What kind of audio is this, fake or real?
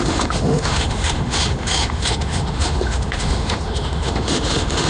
fake